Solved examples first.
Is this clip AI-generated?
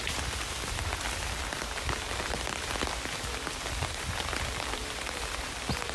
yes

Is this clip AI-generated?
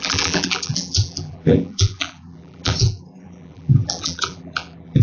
yes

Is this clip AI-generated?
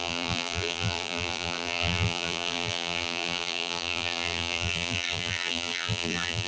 yes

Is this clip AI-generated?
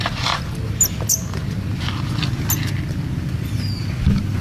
no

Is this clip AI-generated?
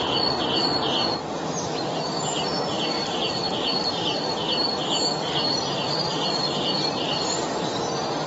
no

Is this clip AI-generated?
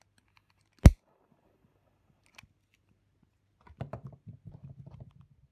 no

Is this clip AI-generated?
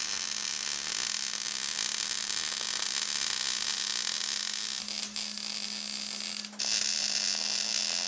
no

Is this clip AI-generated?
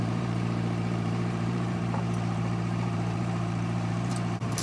yes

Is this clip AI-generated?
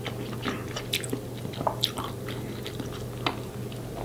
no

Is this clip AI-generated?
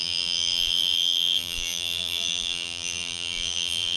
yes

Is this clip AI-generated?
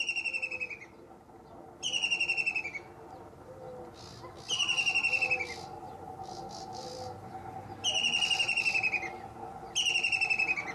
no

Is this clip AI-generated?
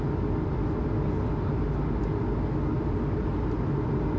no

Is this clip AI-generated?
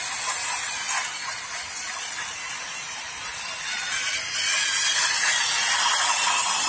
no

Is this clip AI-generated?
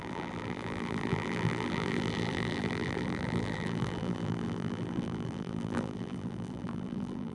yes